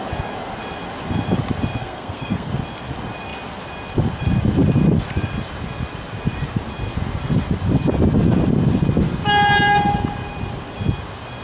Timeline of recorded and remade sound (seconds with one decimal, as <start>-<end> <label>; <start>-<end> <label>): 0.0-1.8 recorded; 1.8-2.5 remade; 2.5-11.4 recorded